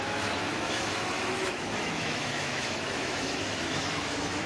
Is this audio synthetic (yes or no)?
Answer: yes